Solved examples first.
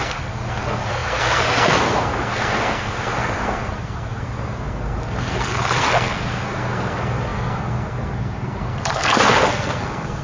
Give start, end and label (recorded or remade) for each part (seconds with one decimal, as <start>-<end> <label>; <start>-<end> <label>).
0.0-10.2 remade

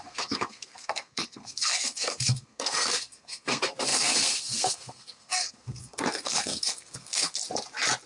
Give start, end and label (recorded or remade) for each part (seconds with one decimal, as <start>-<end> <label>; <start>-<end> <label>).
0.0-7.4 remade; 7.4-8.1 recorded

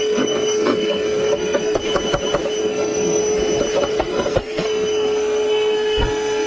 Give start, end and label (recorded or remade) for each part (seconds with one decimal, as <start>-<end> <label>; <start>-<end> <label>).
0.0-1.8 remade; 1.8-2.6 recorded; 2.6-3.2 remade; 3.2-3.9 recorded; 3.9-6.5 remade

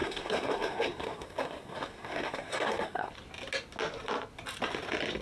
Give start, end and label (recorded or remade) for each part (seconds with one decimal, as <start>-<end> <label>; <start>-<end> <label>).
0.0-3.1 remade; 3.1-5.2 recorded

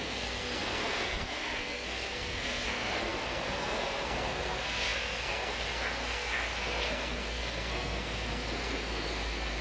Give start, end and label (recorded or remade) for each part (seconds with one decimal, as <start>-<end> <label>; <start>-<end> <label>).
0.0-9.6 remade

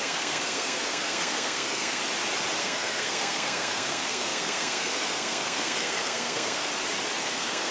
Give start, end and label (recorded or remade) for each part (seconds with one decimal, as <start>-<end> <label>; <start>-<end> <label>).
0.0-2.0 remade; 2.0-2.6 recorded; 2.6-6.7 remade; 6.7-7.2 recorded; 7.2-7.7 remade

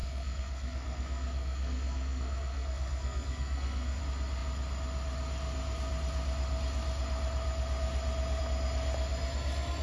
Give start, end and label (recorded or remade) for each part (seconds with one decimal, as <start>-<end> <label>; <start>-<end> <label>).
0.0-4.0 remade; 4.0-9.8 recorded